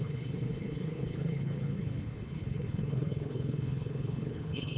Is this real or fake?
fake